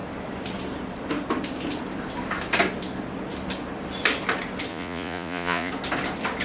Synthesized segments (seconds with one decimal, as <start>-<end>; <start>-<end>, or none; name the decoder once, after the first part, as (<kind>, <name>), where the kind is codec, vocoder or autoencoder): 4.7-5.7 (vocoder, Vocos)